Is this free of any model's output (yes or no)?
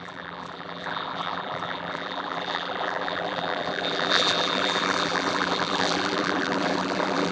no